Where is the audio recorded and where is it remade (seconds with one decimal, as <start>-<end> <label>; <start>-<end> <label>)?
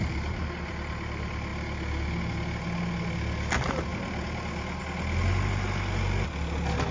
0.0-6.9 recorded